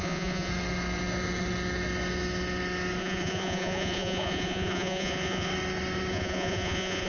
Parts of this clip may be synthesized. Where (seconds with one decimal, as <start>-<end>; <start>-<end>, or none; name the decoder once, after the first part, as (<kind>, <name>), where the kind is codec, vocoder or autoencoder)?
0.0-0.5 (vocoder, Vocos); 3.0-5.5; 6.1-7.1